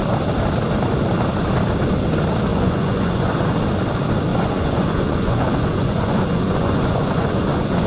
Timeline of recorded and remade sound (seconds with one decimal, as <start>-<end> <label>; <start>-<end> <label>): 0.0-2.5 recorded; 2.5-3.6 remade; 3.6-4.3 recorded; 4.3-7.9 remade